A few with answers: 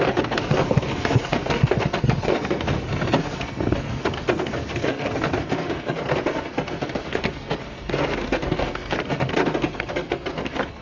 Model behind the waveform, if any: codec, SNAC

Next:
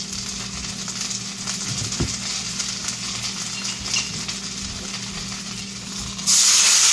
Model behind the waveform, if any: none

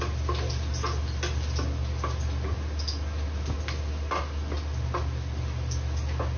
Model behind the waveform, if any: none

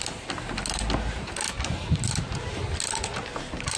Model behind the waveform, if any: none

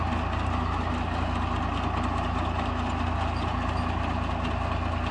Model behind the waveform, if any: none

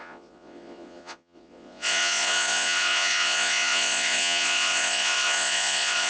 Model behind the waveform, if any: vocoder, Vocos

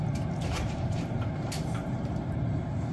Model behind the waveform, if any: vocoder, BigVGAN v2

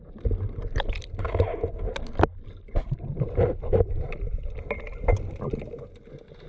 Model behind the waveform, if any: none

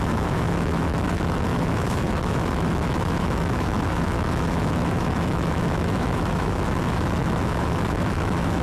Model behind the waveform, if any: autoencoder, DAC-VAE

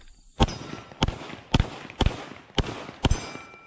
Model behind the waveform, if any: none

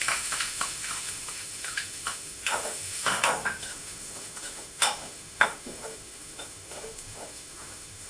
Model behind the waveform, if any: autoencoder, DAC-VAE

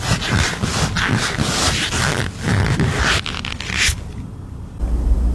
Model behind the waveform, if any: none